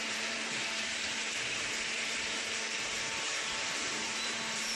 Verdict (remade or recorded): remade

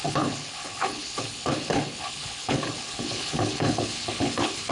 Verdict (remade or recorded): remade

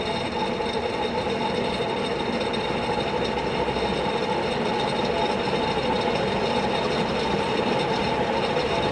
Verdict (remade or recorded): recorded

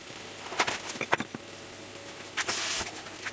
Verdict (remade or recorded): recorded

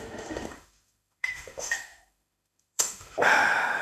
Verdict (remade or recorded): remade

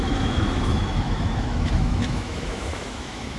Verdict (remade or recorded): remade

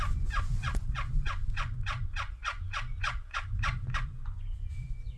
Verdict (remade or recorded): remade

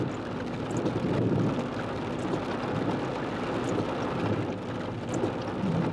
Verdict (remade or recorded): recorded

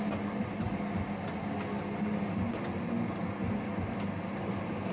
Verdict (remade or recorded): recorded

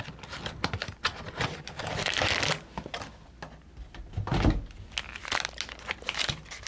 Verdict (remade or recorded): recorded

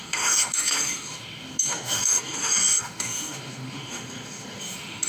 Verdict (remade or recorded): remade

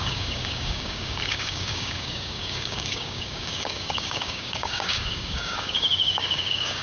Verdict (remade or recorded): remade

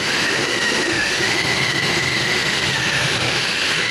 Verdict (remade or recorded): remade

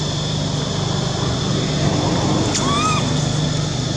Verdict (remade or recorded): recorded